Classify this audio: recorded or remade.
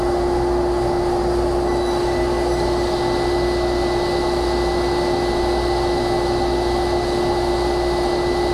recorded